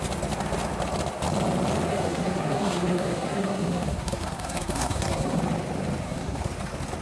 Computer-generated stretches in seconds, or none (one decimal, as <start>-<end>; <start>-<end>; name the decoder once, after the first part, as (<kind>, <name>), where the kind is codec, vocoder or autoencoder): 1.9-5.4 (codec, SNAC); 6.0-6.5